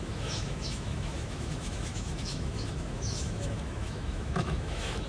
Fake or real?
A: fake